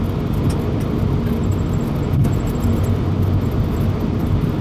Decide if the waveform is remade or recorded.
recorded